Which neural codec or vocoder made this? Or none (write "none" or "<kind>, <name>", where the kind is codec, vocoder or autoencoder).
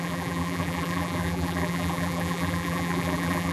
vocoder, BigVGAN v2